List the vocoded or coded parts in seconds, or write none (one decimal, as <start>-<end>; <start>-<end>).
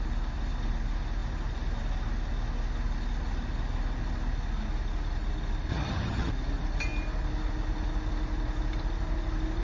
5.7-6.3